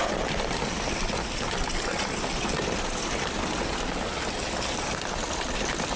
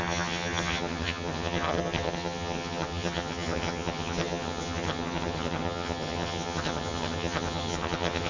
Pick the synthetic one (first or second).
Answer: second